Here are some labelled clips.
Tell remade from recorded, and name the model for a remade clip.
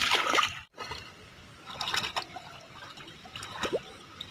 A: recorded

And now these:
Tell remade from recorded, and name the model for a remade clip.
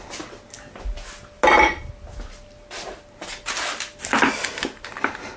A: recorded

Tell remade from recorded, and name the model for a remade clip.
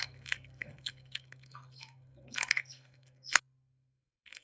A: remade, codec, SNAC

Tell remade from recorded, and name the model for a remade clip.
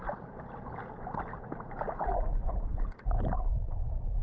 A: recorded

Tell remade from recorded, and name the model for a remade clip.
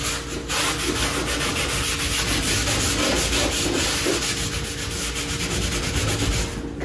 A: recorded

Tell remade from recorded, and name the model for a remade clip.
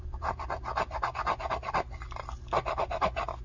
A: recorded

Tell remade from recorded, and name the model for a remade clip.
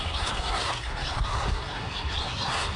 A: remade, codec, SNAC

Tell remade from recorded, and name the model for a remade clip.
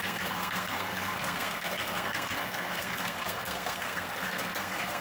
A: remade, codec, SNAC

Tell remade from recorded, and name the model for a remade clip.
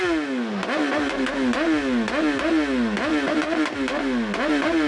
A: recorded